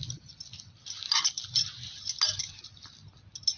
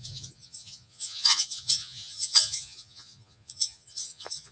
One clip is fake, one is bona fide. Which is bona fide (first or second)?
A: first